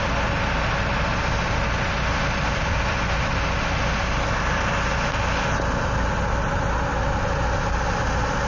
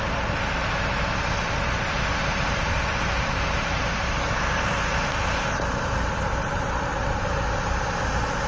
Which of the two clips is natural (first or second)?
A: first